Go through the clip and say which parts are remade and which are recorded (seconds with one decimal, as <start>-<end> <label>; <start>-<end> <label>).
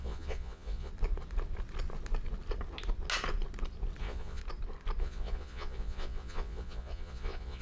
0.0-0.9 remade; 0.9-4.0 recorded; 4.0-4.4 remade; 4.4-5.0 recorded; 5.0-7.6 remade